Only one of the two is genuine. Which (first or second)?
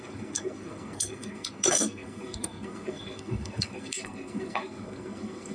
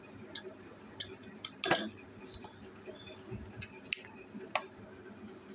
second